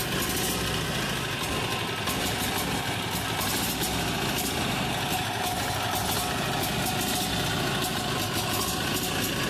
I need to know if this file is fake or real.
real